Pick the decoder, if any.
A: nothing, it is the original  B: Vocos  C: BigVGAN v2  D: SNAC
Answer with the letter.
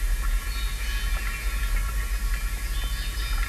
A